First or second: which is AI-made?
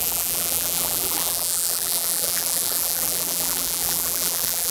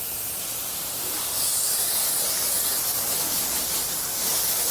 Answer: first